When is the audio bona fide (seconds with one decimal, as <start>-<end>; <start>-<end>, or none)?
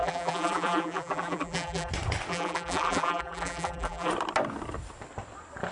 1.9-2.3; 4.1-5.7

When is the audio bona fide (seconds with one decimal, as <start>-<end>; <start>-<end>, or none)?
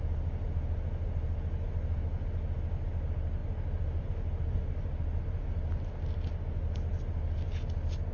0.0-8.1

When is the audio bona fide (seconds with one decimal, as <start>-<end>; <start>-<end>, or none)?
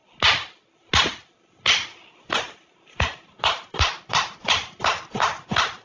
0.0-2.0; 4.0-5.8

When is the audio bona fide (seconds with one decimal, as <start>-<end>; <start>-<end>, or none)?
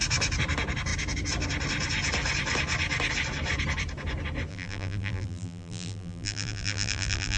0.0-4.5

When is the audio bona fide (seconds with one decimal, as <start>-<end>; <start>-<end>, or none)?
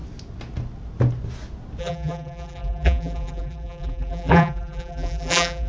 0.0-1.8